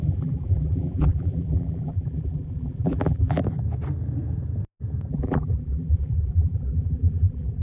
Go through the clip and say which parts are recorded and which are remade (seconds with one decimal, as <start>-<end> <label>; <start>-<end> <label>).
0.0-3.4 remade; 3.4-5.1 recorded; 5.1-7.6 remade